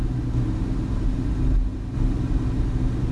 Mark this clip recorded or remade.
recorded